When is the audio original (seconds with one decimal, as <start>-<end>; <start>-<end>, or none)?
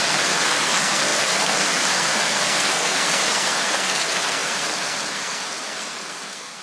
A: none